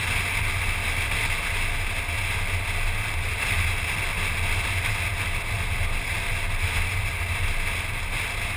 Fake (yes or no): no